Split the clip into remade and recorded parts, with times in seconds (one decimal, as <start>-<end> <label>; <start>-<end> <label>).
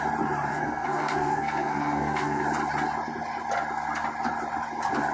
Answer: 0.0-0.5 recorded; 0.5-2.4 remade; 2.4-5.1 recorded